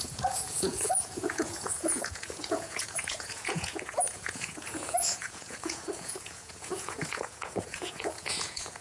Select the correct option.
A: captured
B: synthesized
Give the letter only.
B